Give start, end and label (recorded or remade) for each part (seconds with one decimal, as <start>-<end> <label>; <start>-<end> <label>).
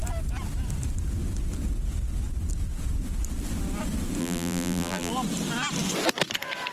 0.0-4.2 recorded; 4.2-5.1 remade; 5.1-6.7 recorded